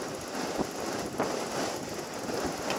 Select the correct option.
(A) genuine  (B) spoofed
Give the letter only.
A